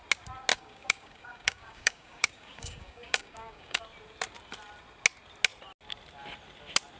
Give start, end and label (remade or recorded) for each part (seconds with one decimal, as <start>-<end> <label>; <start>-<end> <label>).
0.0-0.5 recorded; 0.5-3.8 remade; 3.8-7.0 recorded